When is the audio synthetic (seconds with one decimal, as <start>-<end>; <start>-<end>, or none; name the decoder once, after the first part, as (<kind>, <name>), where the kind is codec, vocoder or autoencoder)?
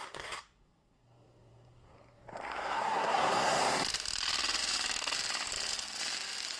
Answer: 0.0-3.6 (codec, SNAC)